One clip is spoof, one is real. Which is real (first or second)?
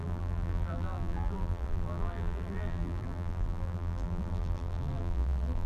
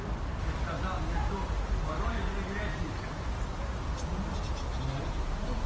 second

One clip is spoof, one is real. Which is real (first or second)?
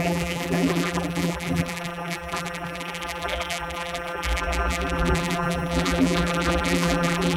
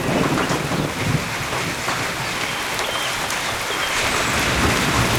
second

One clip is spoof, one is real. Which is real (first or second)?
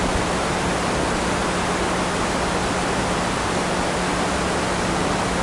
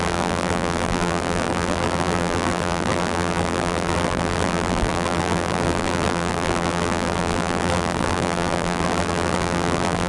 first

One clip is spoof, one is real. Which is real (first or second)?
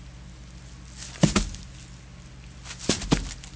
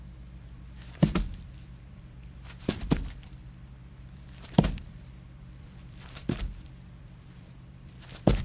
first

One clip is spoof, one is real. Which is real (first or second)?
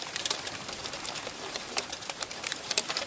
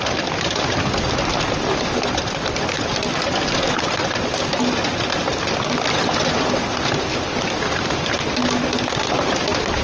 second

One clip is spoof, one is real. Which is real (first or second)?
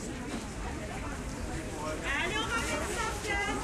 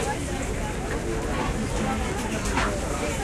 second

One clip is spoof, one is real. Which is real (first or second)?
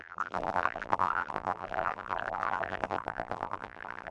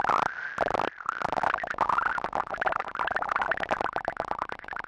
second